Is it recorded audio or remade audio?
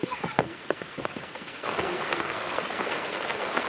remade